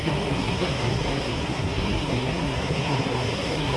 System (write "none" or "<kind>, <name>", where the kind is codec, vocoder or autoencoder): codec, SNAC